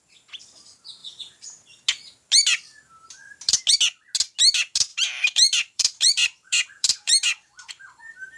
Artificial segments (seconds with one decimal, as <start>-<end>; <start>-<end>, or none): 4.9-7.7